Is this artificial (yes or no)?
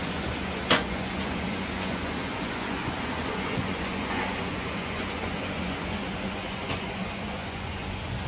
yes